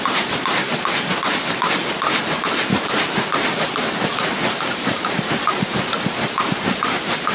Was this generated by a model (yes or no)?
yes